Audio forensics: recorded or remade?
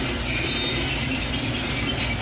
recorded